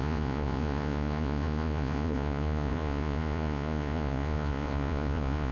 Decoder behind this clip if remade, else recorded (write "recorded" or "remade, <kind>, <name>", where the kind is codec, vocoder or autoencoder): remade, vocoder, Vocos